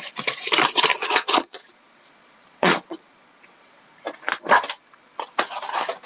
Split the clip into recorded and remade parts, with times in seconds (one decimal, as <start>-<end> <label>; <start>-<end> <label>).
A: 0.0-0.9 recorded; 0.9-3.7 remade; 3.7-6.1 recorded